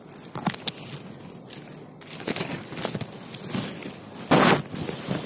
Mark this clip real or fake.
real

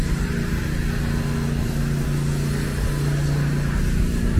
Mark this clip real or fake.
real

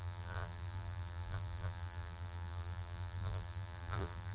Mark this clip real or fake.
fake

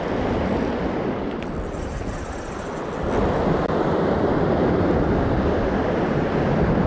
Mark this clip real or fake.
real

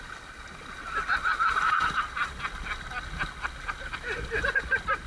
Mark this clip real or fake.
real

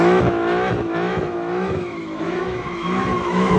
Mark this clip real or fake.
fake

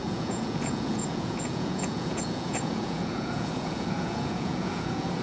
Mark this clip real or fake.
fake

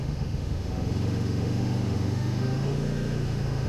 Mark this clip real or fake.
fake